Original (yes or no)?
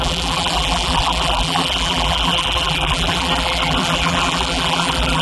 no